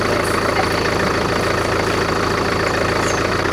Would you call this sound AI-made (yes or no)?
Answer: no